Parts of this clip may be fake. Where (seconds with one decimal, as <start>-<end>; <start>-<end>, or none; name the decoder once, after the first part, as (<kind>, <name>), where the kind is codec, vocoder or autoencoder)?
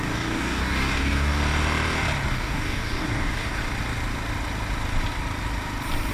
0.0-1.4 (codec, DAC); 2.3-3.6